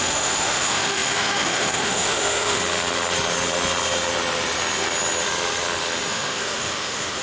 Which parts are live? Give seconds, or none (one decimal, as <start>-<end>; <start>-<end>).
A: 2.6-6.1